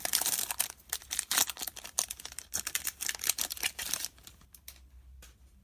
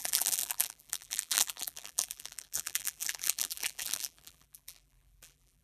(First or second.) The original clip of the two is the first